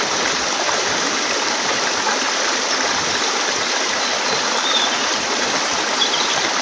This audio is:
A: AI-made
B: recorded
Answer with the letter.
A